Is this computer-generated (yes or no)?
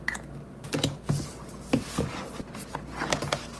no